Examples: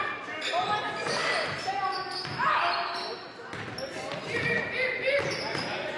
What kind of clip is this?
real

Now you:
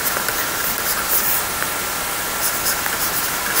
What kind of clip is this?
real